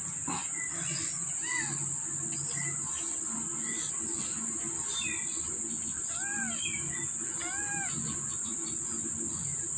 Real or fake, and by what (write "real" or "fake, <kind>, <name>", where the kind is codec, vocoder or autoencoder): real